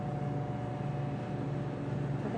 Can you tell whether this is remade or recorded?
recorded